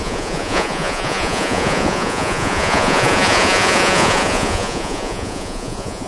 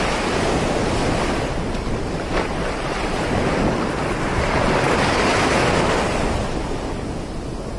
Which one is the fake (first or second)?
first